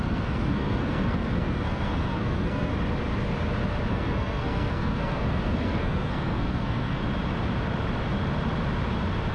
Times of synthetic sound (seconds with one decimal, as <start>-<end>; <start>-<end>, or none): 0.0-2.7; 3.9-7.0